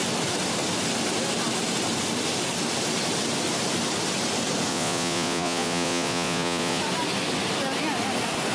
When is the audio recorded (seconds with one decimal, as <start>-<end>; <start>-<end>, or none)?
0.0-4.7; 6.8-8.5